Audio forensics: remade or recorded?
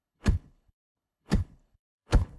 remade